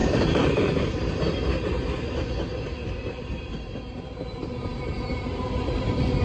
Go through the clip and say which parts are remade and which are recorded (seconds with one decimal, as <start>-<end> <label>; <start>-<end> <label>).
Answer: 0.0-0.7 remade; 0.7-2.7 recorded; 2.7-6.2 remade